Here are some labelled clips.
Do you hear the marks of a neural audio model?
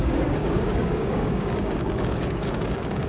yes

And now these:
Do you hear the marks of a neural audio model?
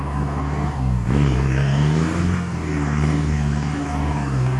yes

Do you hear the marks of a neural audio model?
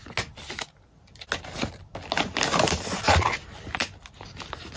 no